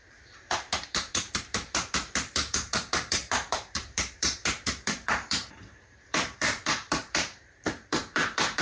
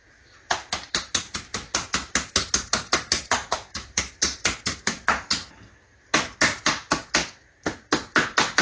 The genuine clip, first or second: second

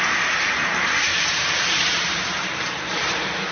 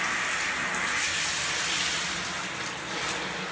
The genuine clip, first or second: second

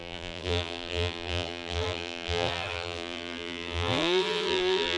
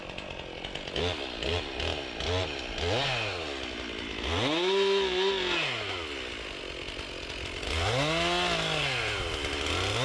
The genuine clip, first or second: second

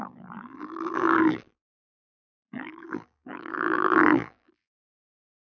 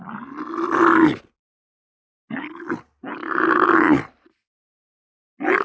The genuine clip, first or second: second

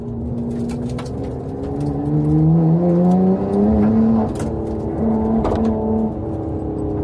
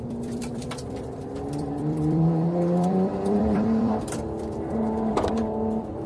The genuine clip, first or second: first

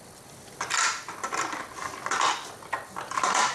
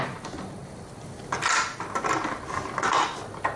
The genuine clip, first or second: second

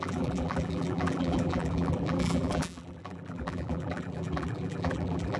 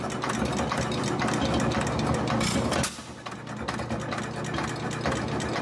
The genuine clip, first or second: second